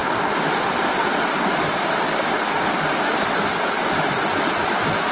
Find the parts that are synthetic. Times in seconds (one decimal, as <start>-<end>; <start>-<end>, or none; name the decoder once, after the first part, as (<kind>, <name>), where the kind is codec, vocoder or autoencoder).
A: none